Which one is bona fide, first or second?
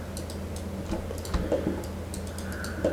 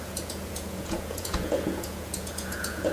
first